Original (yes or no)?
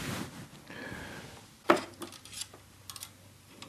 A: yes